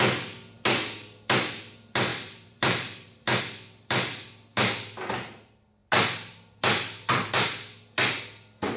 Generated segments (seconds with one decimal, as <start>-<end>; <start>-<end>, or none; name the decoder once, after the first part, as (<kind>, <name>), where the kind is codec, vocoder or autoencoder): 2.1-3.4 (vocoder, BigVGAN v2)